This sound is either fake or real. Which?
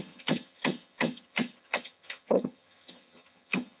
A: fake